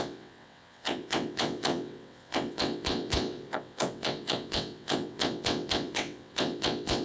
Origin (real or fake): fake